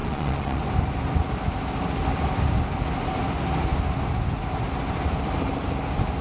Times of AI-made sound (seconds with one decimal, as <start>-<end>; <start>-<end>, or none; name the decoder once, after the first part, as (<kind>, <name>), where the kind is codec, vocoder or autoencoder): 0.0-0.6 (vocoder, Vocos)